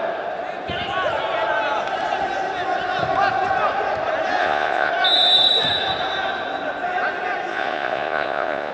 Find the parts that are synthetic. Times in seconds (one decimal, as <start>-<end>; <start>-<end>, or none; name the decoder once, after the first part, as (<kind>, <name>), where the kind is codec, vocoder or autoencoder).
4.4-4.9 (vocoder, Vocos); 7.5-8.7